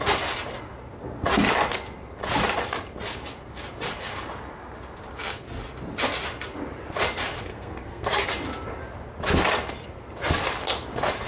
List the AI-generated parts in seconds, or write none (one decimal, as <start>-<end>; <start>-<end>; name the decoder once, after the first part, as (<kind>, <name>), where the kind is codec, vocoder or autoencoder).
7.5-8.3 (codec, SNAC)